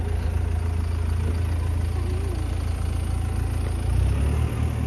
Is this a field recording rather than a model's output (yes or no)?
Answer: yes